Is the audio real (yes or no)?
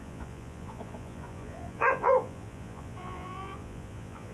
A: no